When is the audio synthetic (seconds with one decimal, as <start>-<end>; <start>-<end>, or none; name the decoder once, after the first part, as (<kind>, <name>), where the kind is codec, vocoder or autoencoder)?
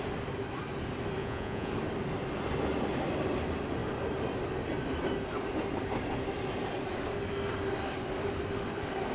1.2-1.7 (vocoder, Vocos)